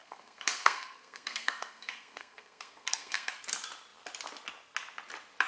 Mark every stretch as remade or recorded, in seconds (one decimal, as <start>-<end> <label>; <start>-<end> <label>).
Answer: 0.0-3.3 remade; 3.3-5.5 recorded